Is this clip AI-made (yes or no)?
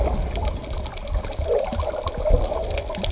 no